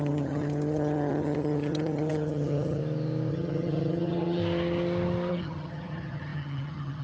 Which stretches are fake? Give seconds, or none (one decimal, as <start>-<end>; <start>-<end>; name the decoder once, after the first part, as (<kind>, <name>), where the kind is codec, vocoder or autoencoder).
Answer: 0.0-2.8 (vocoder, HiFi-GAN); 3.3-4.4; 5.3-7.0